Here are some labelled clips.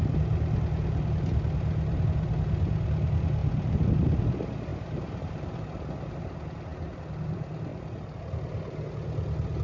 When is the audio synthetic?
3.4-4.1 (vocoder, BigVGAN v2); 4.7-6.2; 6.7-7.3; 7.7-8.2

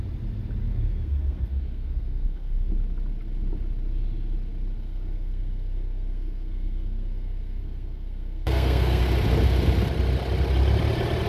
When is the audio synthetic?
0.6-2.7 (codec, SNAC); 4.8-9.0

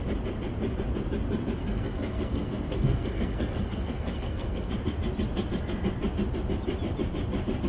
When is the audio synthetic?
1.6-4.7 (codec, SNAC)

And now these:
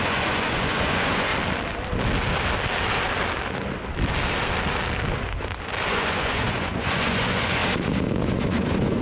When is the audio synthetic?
0.0-1.3 (vocoder, Vocos); 5.9-7.6; 8.2-9.0